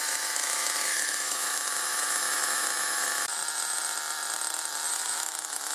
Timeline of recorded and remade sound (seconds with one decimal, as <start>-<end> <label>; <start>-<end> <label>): 0.0-3.4 remade; 3.4-4.9 recorded; 4.9-5.7 remade